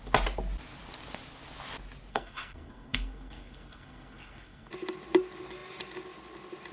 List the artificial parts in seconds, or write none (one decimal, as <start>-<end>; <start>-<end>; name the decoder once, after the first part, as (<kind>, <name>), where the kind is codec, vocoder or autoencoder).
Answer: 2.1-4.7 (codec, SNAC)